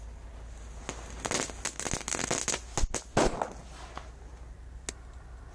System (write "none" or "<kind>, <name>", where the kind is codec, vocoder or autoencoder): none